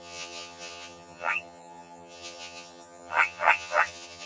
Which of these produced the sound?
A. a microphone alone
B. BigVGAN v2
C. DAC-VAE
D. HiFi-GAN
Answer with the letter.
D